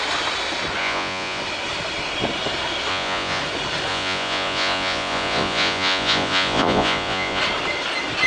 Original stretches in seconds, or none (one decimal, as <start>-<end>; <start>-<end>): 0.0-0.8; 1.4-2.9; 3.4-3.9; 7.4-8.3